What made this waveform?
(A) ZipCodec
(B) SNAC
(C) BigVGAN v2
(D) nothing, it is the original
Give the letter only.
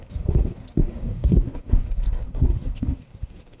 B